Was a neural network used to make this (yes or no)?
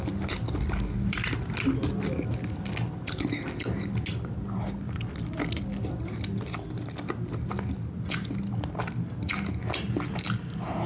no